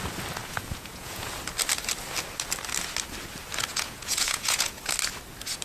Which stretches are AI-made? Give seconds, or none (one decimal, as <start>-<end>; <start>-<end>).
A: 0.4-1.3; 3.7-4.8